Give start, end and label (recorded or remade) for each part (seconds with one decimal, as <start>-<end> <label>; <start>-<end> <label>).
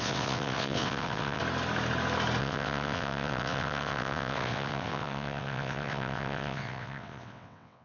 0.0-1.4 remade; 1.4-2.4 recorded; 2.4-7.8 remade